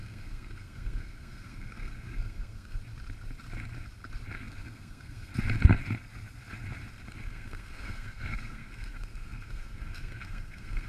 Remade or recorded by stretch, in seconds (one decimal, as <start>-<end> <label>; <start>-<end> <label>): 0.0-2.8 remade; 2.8-4.3 recorded; 4.3-5.3 remade; 5.3-7.3 recorded; 7.3-10.9 remade